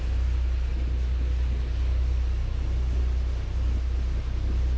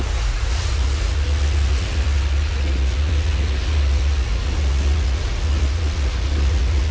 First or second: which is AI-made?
second